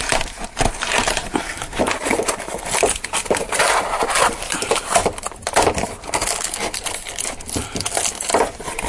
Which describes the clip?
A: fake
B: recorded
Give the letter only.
B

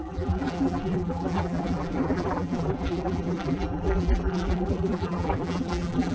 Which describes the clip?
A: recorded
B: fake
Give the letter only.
B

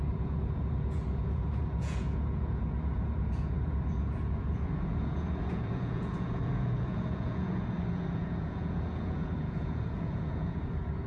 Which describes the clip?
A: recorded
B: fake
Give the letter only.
B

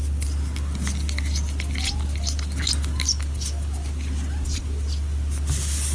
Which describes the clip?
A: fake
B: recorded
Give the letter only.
B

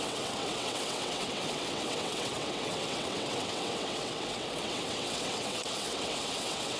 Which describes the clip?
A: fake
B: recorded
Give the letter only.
A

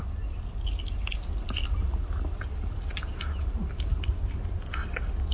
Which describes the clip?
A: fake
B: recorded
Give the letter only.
B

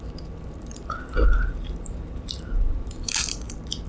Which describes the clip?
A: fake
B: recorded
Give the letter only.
A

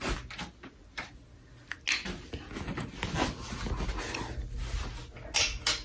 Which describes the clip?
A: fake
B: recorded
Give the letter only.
B